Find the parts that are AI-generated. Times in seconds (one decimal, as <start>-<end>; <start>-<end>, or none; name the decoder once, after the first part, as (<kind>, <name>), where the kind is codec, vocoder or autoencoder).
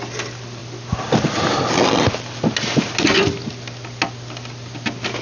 none